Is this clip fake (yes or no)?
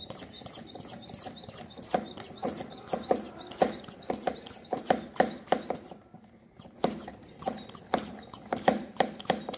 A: no